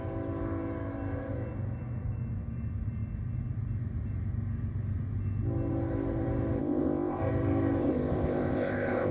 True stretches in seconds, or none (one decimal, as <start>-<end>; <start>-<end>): 0.0-6.6; 7.2-7.8